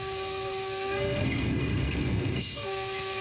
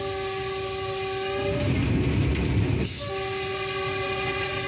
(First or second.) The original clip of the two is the second